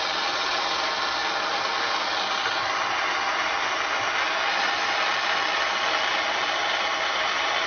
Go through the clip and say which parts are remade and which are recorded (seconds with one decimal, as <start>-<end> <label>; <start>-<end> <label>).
0.0-7.7 recorded